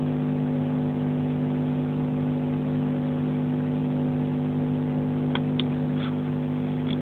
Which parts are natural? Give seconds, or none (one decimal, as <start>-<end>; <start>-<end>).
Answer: 0.0-7.0